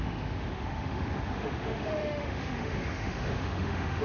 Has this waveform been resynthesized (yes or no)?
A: yes